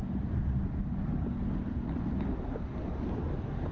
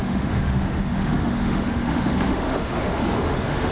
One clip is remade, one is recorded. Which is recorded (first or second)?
first